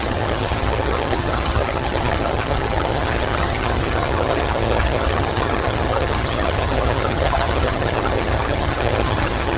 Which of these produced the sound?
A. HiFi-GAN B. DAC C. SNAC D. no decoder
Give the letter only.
A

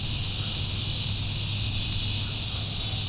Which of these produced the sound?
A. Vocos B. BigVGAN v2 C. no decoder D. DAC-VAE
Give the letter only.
C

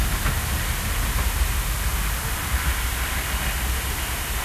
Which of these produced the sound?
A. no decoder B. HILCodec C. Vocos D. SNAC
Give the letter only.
A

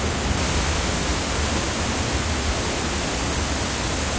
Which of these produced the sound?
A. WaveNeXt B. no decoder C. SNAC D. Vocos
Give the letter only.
B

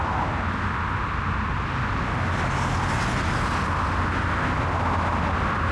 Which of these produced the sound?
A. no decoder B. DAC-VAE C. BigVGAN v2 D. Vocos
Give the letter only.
A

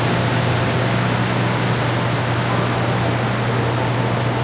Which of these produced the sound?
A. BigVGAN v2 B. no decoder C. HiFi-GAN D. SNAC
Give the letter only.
B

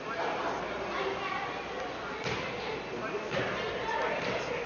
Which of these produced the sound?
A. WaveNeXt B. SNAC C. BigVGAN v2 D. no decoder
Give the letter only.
D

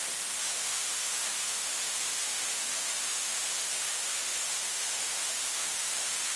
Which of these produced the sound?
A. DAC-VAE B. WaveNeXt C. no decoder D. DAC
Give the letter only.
A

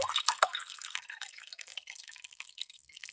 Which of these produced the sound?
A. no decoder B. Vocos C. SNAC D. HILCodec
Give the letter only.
C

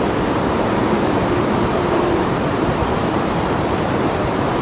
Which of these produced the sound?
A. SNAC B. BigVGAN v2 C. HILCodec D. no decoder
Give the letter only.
B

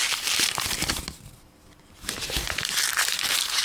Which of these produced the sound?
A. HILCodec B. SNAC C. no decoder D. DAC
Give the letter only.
C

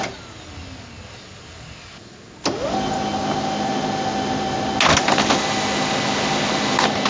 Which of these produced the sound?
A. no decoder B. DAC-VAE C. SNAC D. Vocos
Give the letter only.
A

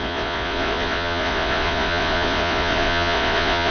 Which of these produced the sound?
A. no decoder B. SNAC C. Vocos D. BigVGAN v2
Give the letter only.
C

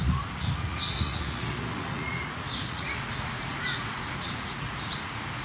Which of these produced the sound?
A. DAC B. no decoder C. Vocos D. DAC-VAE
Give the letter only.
C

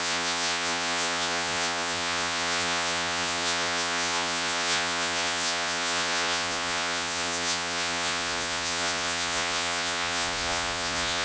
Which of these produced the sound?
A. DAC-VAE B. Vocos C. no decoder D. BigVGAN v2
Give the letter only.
B